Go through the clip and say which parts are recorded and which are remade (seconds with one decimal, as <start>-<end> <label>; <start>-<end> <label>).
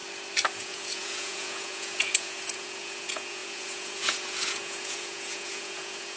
0.0-0.6 recorded; 0.6-6.2 remade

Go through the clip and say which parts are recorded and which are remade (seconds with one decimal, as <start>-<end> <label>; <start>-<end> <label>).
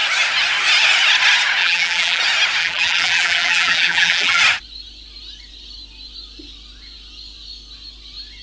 0.0-1.6 recorded; 1.6-2.2 remade; 2.2-2.6 recorded; 2.6-4.4 remade; 4.4-8.4 recorded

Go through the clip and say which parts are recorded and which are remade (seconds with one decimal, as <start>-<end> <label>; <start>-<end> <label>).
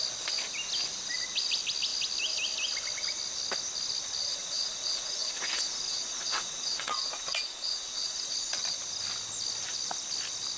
0.0-4.3 recorded; 4.3-8.6 remade; 8.6-10.6 recorded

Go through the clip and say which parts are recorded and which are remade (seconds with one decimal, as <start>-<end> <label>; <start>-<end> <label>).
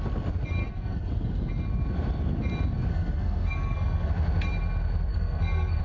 0.0-0.6 recorded; 0.6-1.5 remade; 1.5-2.9 recorded; 2.9-4.1 remade; 4.1-5.1 recorded; 5.1-5.8 remade